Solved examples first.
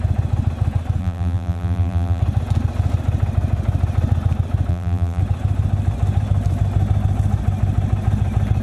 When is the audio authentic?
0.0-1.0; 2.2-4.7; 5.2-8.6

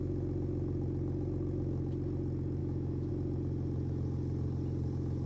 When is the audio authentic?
0.0-2.6; 3.1-5.3

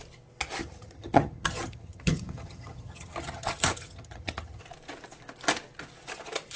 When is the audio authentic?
0.0-0.6; 4.6-6.6

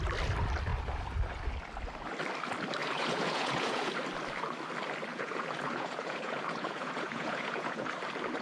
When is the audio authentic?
0.0-2.8; 3.9-5.1; 7.9-8.4

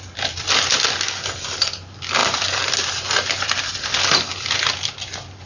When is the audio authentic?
0.0-5.5